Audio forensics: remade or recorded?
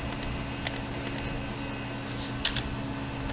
recorded